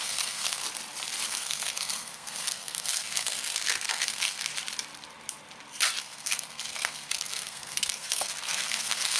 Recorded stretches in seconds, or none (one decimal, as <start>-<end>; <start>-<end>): 0.6-1.3; 4.5-6.0